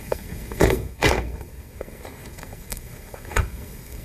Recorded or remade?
remade